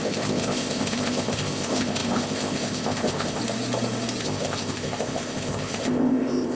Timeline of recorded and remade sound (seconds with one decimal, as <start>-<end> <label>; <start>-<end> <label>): 0.0-3.4 remade; 3.4-4.2 recorded; 4.2-6.5 remade